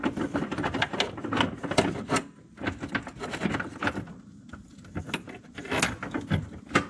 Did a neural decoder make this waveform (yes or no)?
no